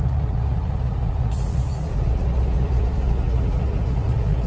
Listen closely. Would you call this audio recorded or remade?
remade